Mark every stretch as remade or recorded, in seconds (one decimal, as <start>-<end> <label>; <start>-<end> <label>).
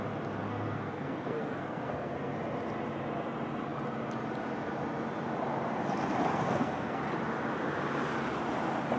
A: 0.0-0.4 recorded; 0.4-2.3 remade; 2.3-6.3 recorded; 6.3-7.0 remade; 7.0-9.0 recorded